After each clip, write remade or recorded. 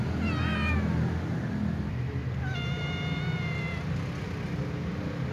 remade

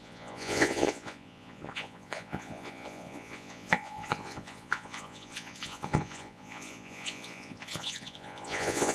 remade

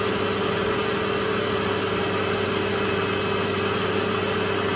recorded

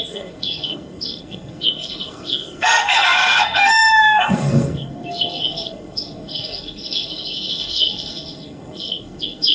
remade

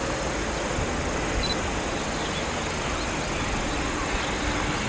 recorded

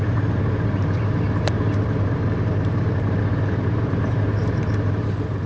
remade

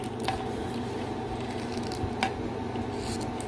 recorded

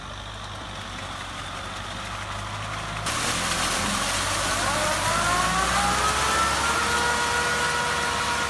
recorded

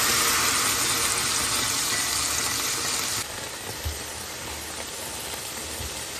recorded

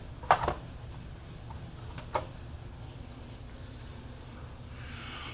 recorded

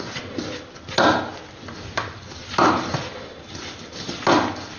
recorded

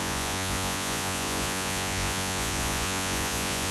remade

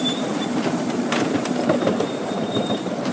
remade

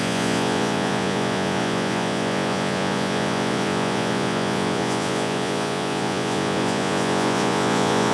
remade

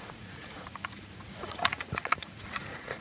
remade